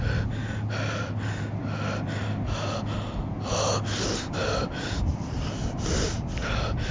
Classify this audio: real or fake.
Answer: real